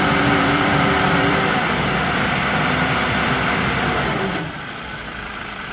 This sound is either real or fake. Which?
fake